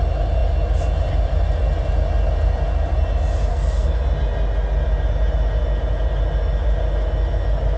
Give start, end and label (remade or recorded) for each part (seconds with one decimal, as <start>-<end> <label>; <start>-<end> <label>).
0.0-3.5 recorded; 3.5-4.0 remade; 4.0-7.8 recorded